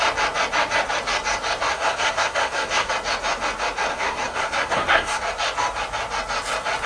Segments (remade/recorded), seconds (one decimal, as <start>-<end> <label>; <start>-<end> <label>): 0.0-1.7 recorded; 1.7-2.9 remade; 2.9-3.9 recorded; 3.9-5.2 remade; 5.2-6.9 recorded